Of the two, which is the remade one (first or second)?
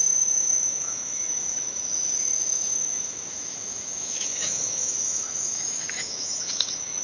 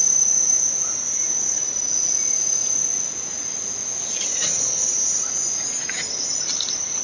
first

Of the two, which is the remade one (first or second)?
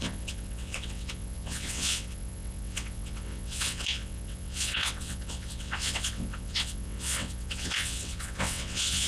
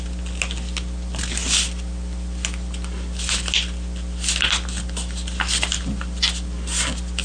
first